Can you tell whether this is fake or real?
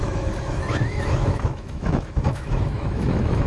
fake